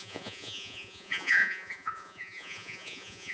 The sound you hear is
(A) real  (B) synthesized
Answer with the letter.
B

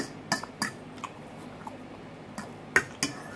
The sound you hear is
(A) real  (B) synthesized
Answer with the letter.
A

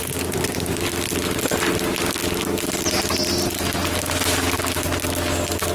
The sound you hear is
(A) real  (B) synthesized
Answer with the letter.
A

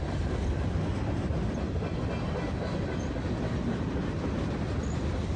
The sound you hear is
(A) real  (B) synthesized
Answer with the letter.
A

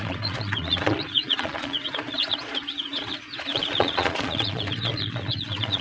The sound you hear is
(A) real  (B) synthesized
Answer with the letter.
B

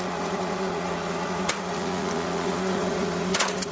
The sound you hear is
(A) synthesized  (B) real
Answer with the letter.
A